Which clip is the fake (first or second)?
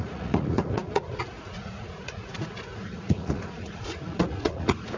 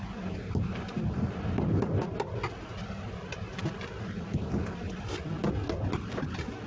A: first